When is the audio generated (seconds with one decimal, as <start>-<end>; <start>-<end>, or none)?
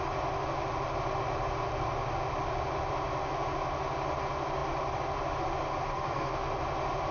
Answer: 5.9-6.4